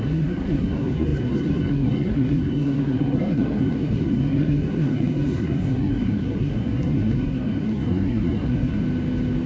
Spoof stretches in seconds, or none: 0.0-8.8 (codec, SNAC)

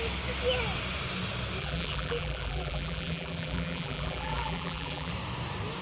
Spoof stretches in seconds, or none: 1.6-5.1 (vocoder, BigVGAN v2)

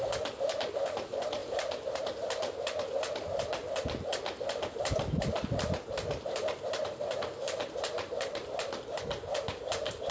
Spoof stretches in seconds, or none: none

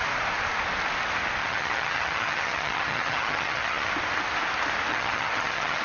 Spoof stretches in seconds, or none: 1.4-3.9 (vocoder, HiFi-GAN); 4.9-5.8

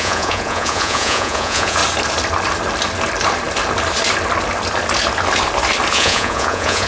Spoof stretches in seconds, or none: 0.0-1.8 (vocoder, Vocos); 5.9-6.9

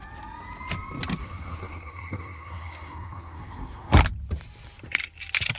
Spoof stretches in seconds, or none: 1.2-4.0 (codec, SNAC)